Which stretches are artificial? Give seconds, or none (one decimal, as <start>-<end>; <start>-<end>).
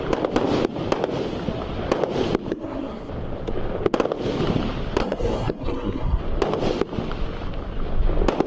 2.5-3.1; 5.0-6.2